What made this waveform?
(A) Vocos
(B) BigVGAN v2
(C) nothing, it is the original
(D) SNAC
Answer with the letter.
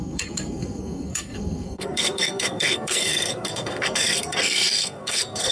D